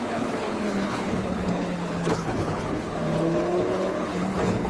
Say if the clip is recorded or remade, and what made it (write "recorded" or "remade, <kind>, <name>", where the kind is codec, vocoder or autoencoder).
remade, codec, HILCodec